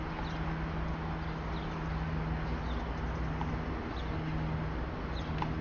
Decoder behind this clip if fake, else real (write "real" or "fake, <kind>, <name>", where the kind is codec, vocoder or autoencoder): real